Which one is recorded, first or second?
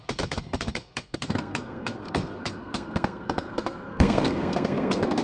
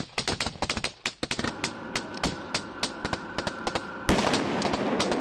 second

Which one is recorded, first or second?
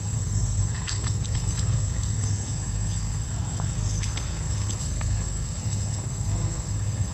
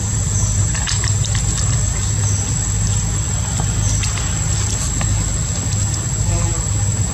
second